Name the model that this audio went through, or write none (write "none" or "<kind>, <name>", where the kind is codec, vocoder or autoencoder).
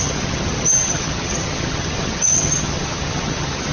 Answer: vocoder, HiFi-GAN